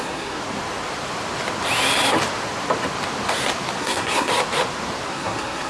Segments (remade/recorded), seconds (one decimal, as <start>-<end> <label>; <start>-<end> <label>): 0.0-0.4 remade; 0.4-3.8 recorded; 3.8-4.3 remade; 4.3-5.1 recorded; 5.1-5.7 remade